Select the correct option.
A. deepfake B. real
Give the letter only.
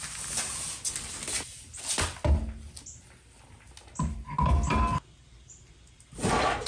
B